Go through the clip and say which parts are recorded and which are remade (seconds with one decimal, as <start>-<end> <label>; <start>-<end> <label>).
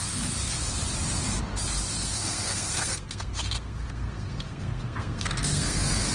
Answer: 0.0-2.0 recorded; 2.0-6.1 remade